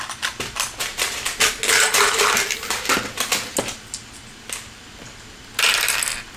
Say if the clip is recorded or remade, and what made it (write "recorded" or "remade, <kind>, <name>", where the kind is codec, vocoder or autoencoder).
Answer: recorded